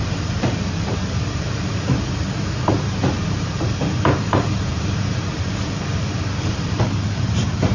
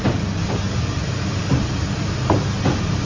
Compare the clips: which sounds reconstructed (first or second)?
first